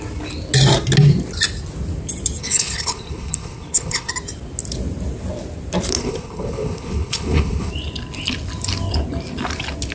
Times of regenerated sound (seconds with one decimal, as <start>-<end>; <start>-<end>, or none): 2.4-4.1; 6.0-7.7